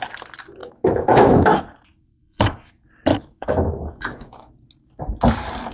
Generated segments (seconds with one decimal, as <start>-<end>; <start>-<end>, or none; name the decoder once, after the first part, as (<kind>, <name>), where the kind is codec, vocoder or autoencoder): 0.6-1.6 (autoencoder, DAC-VAE); 2.1-2.7; 3.1-4.5